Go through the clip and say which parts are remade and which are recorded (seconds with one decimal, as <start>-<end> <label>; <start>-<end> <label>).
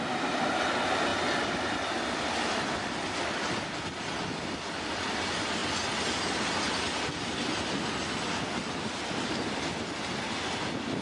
0.0-11.0 recorded